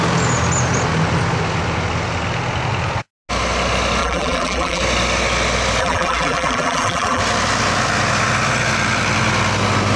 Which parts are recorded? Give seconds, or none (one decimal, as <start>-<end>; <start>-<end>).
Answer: 0.0-4.0; 4.8-5.8; 7.2-10.0